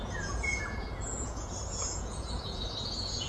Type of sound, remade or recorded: remade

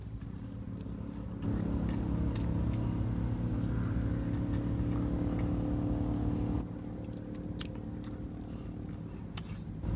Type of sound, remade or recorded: recorded